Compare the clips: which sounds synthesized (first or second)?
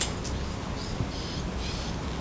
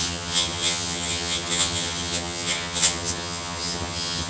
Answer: second